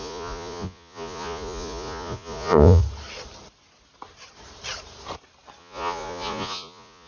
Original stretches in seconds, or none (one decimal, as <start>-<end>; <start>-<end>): 2.8-5.6